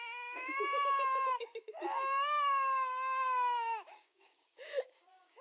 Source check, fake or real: fake